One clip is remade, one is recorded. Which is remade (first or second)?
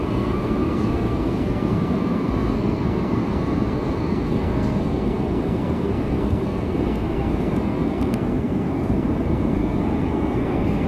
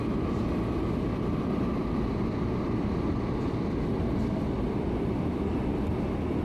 first